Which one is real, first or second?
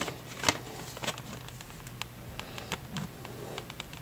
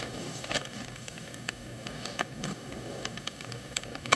first